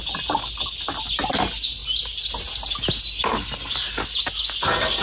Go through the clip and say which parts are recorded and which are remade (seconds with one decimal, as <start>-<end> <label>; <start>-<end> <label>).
0.0-5.0 recorded